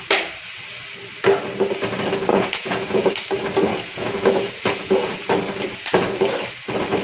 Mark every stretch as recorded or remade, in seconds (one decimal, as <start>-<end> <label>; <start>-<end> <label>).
0.0-2.3 recorded; 2.3-3.1 remade; 3.1-3.7 recorded; 3.7-5.3 remade; 5.3-7.0 recorded